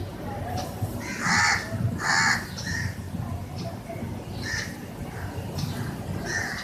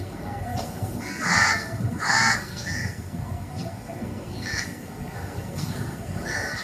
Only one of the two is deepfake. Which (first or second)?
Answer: second